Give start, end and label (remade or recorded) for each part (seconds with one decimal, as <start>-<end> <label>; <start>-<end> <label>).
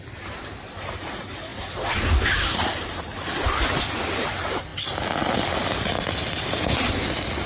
0.0-7.5 recorded